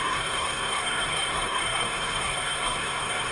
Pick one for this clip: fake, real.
fake